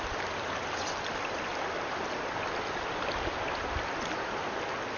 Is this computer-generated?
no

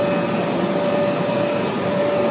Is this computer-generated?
no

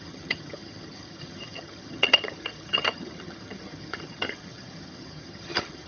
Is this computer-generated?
yes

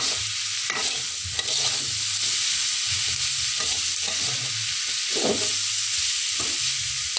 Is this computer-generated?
no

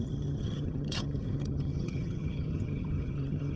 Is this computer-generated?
yes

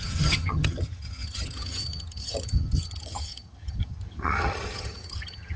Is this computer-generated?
yes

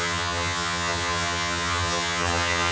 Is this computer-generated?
yes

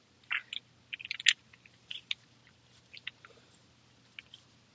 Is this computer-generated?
no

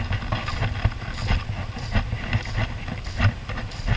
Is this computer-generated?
no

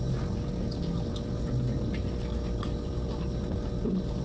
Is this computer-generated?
no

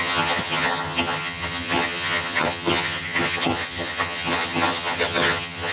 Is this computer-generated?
yes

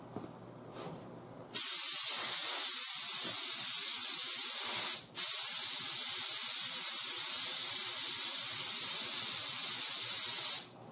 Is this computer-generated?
no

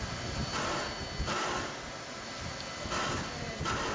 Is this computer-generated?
no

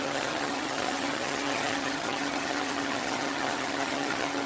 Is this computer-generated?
yes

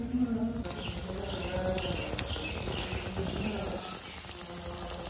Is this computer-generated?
no